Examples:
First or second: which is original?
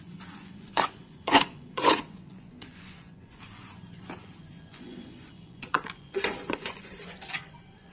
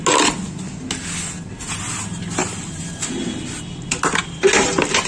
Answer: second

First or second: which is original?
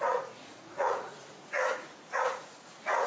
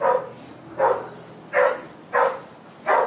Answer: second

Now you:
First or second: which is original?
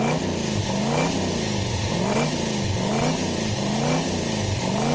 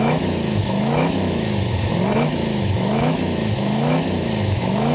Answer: first